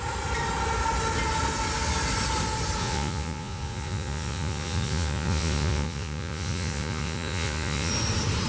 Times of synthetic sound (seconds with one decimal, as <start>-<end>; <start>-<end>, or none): 2.8-7.9